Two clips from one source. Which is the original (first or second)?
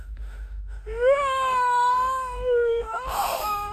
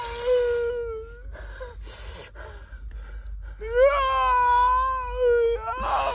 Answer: second